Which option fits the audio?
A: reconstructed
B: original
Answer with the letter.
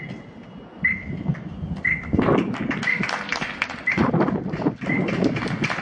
B